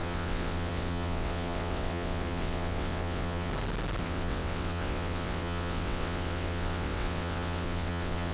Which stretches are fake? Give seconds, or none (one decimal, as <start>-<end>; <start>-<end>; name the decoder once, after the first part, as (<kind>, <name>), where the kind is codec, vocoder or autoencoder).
0.0-3.5 (vocoder, WaveNeXt); 4.0-8.3